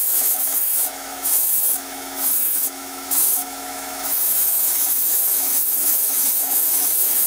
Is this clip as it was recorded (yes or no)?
no